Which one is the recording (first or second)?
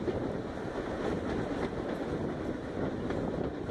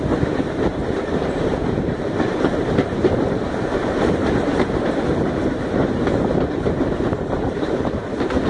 first